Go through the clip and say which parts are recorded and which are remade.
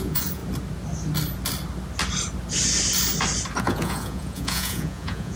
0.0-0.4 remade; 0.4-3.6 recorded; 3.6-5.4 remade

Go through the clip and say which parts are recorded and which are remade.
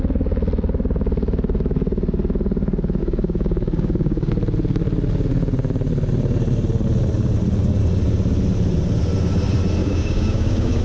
0.0-3.0 recorded; 3.0-4.3 remade; 4.3-9.8 recorded; 9.8-10.8 remade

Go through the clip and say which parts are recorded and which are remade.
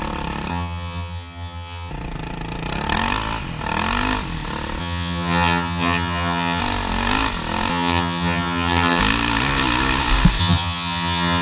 0.0-0.5 recorded; 0.5-1.9 remade; 1.9-4.8 recorded; 4.8-6.6 remade; 6.6-7.7 recorded; 7.7-9.0 remade; 9.0-10.4 recorded; 10.4-11.4 remade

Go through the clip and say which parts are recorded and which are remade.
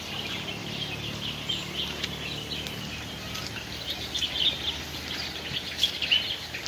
0.0-6.7 recorded